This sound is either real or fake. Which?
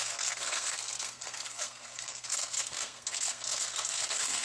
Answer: fake